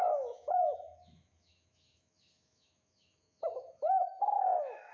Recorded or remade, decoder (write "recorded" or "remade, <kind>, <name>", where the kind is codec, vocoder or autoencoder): remade, autoencoder, DAC-VAE